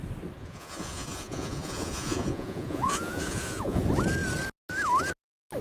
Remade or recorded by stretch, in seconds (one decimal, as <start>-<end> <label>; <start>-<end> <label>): 0.0-0.4 recorded; 0.4-3.8 remade; 3.8-5.6 recorded